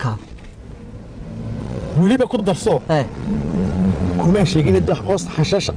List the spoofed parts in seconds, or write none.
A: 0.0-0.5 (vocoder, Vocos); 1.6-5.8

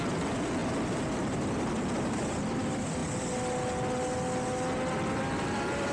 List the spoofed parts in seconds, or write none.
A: 0.0-3.0 (vocoder, BigVGAN v2); 5.2-5.9

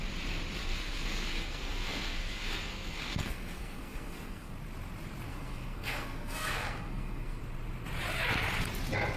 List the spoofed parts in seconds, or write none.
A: 0.6-4.5 (codec, SNAC); 5.3-7.4

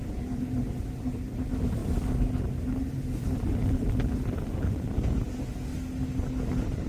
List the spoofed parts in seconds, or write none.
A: 0.0-5.7 (vocoder, BigVGAN v2); 6.5-6.9